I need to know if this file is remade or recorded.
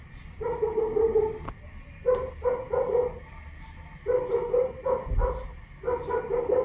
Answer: recorded